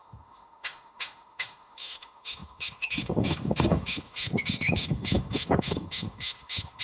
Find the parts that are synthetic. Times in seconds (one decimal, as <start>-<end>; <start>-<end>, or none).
0.0-6.8